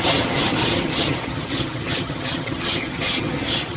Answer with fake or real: fake